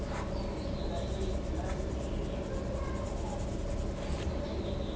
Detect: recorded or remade recorded